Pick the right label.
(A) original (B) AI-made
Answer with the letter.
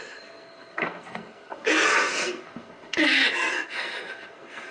B